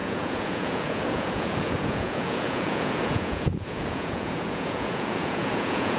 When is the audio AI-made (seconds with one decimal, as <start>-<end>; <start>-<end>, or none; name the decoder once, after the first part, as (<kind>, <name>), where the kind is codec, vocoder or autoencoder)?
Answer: 0.0-6.0 (vocoder, Vocos)